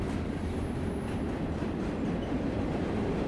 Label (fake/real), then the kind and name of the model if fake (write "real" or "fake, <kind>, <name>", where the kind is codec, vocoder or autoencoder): real